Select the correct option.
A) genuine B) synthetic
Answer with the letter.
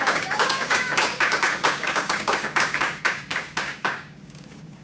B